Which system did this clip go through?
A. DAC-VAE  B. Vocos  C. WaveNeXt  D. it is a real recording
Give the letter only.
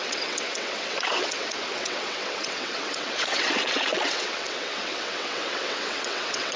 C